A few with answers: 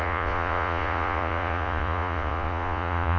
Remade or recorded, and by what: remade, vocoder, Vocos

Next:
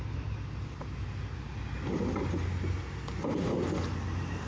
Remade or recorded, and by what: recorded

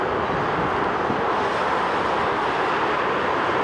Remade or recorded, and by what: recorded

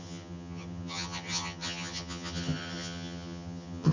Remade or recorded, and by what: remade, vocoder, HiFi-GAN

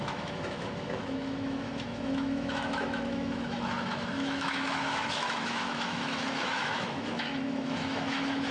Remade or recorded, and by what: remade, autoencoder, DAC-VAE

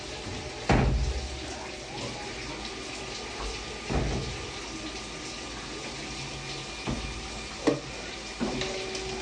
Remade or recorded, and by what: recorded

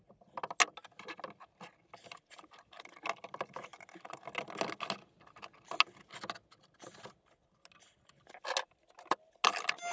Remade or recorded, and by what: recorded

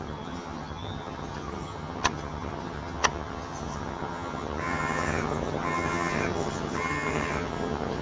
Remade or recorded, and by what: remade, vocoder, HiFi-GAN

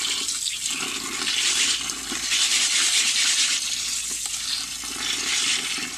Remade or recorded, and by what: recorded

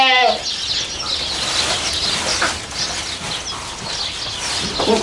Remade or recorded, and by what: recorded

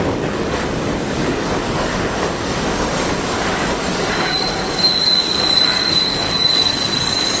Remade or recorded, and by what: remade, codec, DAC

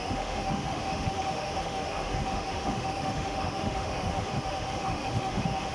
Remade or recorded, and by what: remade, autoencoder, DAC-VAE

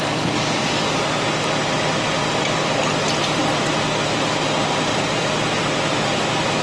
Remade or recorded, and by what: recorded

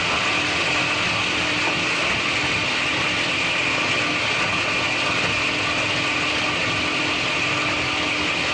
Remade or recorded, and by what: recorded